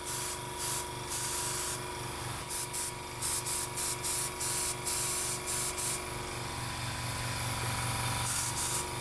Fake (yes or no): no